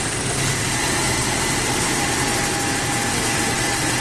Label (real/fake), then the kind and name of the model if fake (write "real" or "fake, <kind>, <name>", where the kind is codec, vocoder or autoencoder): real